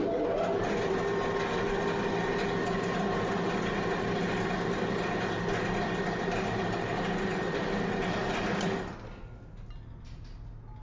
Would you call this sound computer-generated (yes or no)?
no